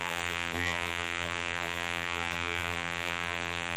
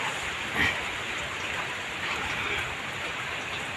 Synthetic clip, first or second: first